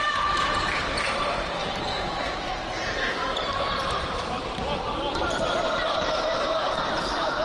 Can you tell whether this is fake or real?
fake